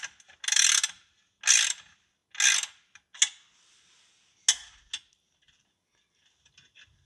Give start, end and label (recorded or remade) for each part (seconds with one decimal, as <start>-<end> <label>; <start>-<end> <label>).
0.0-7.1 recorded